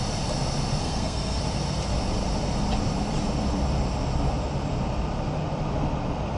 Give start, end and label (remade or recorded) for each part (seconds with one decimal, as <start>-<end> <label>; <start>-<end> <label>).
0.0-0.8 recorded; 0.8-1.4 remade; 1.4-6.4 recorded